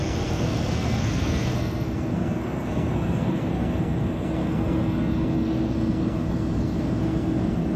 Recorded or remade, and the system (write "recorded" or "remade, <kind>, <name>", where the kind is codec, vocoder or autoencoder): remade, codec, SNAC